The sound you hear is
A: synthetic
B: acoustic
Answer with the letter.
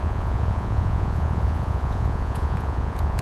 A